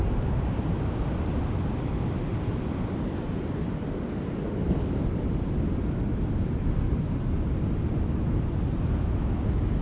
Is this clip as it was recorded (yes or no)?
yes